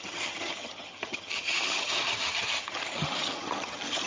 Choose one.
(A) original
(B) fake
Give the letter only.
B